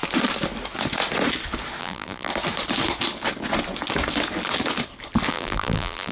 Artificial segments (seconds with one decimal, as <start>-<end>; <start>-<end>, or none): 1.8-2.3; 5.3-6.1